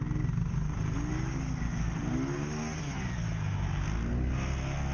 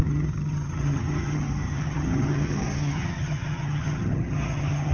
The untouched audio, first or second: first